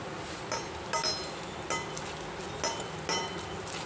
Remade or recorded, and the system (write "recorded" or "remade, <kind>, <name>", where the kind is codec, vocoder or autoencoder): recorded